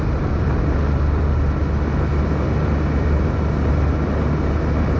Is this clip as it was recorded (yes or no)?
yes